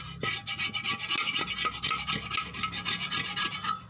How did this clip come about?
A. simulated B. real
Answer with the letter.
B